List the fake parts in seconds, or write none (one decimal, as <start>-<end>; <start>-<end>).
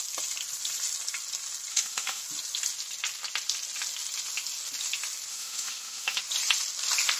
1.7-2.2; 5.3-6.2